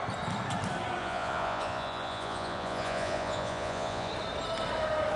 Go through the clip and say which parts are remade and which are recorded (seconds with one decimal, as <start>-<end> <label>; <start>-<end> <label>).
0.0-1.0 recorded; 1.0-4.1 remade; 4.1-5.2 recorded